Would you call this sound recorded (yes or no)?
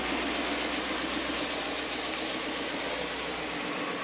yes